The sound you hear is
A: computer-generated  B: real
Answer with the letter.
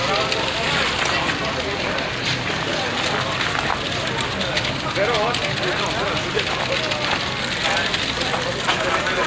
B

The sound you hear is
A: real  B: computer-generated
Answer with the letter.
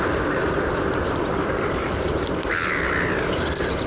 B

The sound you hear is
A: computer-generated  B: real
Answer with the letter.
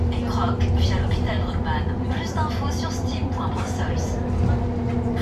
B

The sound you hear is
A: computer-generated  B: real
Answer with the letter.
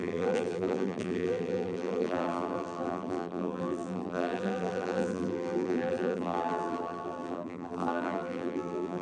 A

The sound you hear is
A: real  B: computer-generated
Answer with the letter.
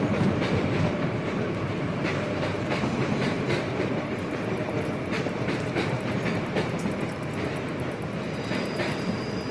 B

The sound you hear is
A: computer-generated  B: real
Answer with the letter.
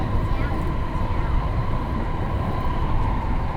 A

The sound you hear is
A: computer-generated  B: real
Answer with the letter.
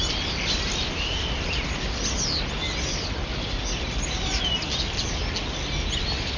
B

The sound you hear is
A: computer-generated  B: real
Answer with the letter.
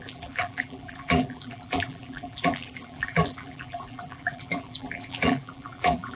A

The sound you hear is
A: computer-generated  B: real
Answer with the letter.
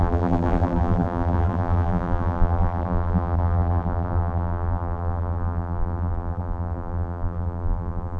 A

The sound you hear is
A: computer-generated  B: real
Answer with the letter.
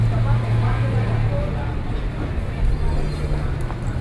B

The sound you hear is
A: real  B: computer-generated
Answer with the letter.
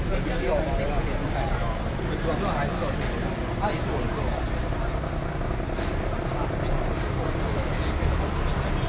A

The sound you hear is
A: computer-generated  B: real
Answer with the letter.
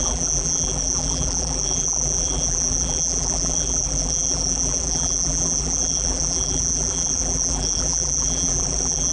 A